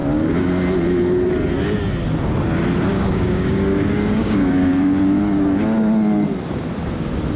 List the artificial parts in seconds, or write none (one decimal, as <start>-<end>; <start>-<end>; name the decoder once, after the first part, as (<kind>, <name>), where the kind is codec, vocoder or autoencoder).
2.9-5.6 (codec, DAC)